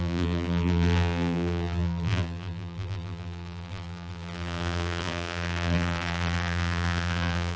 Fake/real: fake